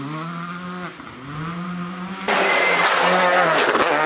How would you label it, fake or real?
real